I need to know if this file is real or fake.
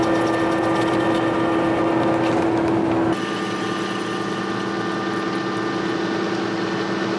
real